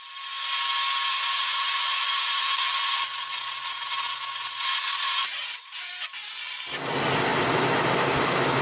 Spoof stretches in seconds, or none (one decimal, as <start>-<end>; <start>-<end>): 1.1-5.9